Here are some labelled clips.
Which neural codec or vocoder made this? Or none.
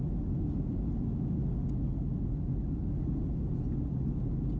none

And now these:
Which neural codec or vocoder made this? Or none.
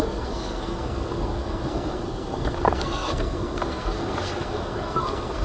codec, SNAC